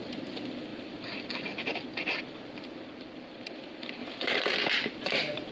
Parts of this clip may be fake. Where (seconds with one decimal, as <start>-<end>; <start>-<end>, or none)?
none